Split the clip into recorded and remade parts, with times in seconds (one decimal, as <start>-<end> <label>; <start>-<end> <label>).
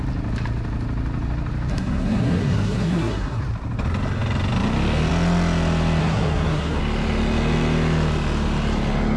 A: 0.0-1.7 recorded; 1.7-3.4 remade; 3.4-6.0 recorded; 6.0-6.8 remade; 6.8-9.2 recorded